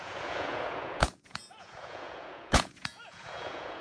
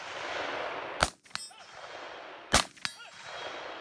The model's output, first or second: first